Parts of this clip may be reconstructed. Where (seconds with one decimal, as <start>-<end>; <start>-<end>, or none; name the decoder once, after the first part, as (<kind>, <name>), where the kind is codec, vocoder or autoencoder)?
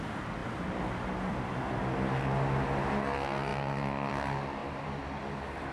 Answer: 0.4-1.8 (vocoder, BigVGAN v2); 3.5-4.1; 4.6-5.7